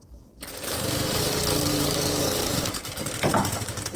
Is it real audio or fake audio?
fake